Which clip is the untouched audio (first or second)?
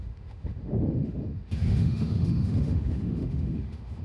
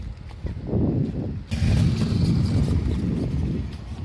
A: second